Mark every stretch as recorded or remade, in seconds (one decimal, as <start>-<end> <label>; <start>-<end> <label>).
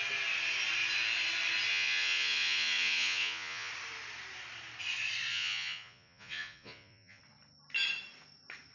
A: 0.0-1.7 recorded; 1.7-3.7 remade; 3.7-5.3 recorded; 5.3-7.2 remade; 7.2-8.7 recorded